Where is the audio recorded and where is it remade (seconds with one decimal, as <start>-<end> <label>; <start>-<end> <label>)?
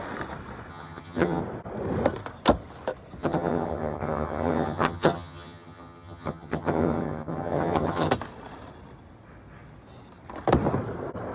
0.0-0.7 recorded; 0.7-1.4 remade; 1.4-3.2 recorded; 3.2-8.1 remade; 8.1-11.3 recorded